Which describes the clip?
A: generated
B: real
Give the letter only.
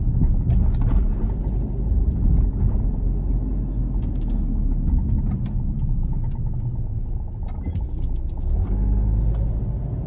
B